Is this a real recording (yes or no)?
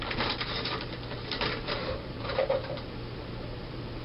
no